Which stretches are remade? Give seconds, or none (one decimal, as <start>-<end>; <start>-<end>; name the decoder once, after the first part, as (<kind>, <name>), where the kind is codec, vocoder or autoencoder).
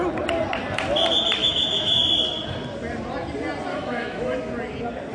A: 1.4-2.0 (autoencoder, DAC-VAE); 3.7-4.5